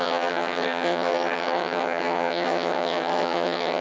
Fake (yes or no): yes